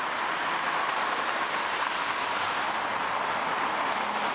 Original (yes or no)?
yes